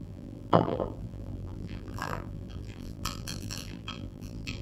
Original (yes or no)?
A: no